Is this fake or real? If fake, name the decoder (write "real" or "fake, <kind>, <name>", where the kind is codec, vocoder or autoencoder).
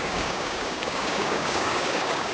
fake, codec, DAC